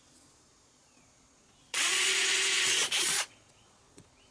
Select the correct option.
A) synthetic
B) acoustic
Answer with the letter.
A